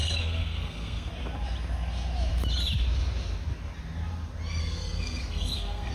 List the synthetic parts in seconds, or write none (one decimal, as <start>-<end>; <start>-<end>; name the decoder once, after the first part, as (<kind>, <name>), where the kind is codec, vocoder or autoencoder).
0.0-1.1 (codec, SNAC); 4.6-5.9